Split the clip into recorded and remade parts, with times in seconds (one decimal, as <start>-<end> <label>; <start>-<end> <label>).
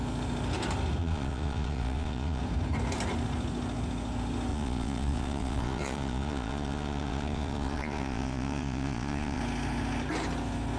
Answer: 0.0-1.0 recorded; 1.0-2.4 remade; 2.4-4.5 recorded; 4.5-9.4 remade; 9.4-10.8 recorded